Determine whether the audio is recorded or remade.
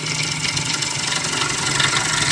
recorded